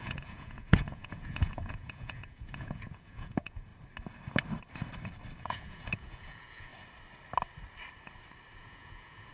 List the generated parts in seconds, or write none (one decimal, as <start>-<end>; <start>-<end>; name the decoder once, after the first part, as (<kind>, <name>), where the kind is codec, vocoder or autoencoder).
0.0-3.7 (vocoder, Vocos); 5.4-6.7; 8.6-9.3